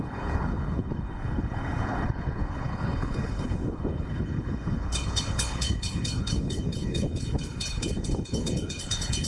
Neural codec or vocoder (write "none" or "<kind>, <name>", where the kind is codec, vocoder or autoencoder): codec, HILCodec